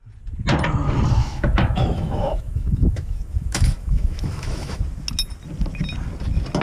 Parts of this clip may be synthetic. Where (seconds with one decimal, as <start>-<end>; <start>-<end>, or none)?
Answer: 1.2-4.8